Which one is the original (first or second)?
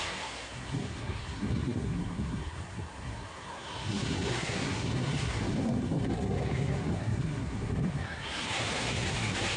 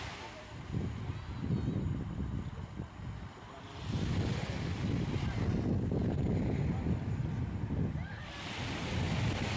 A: second